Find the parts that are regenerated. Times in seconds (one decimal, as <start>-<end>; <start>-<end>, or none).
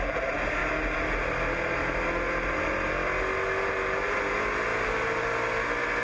4.7-5.3